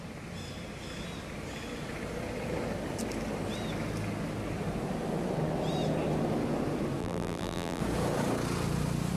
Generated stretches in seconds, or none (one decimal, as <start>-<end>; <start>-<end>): 7.0-7.8